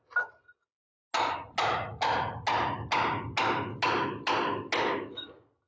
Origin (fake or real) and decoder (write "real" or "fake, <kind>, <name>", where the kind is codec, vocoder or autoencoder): real